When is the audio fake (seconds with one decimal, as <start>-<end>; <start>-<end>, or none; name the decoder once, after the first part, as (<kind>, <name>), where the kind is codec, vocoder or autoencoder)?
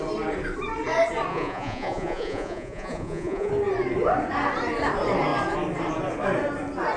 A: 1.3-3.5 (vocoder, Vocos)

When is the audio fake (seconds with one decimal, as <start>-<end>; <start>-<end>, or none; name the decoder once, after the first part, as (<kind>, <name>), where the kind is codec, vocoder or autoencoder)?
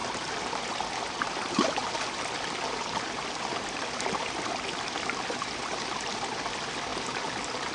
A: none